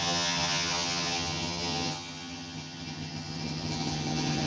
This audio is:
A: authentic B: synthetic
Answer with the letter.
B